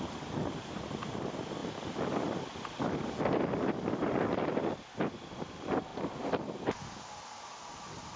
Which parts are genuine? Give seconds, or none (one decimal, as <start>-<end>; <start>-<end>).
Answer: 0.0-8.2